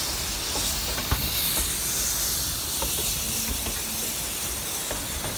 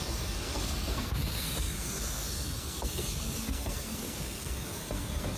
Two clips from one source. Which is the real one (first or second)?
first